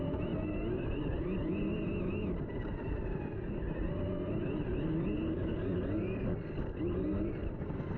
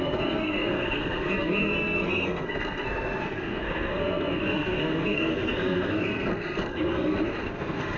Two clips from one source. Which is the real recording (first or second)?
first